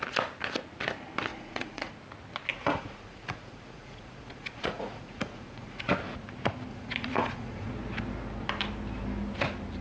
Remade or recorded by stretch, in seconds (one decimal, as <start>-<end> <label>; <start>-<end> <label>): 0.0-1.3 recorded; 1.3-1.9 remade; 1.9-2.5 recorded; 2.5-5.9 remade; 5.9-6.7 recorded; 6.7-7.7 remade; 7.7-9.8 recorded